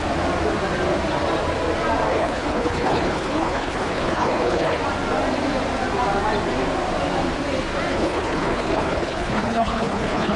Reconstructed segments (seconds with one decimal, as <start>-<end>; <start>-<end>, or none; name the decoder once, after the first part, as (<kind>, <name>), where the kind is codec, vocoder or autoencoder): 2.1-4.8 (codec, HILCodec); 7.9-10.4